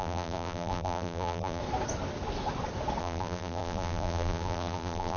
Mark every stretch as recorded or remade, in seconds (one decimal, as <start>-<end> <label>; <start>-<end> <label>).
0.0-1.6 remade; 1.6-3.0 recorded; 3.0-5.2 remade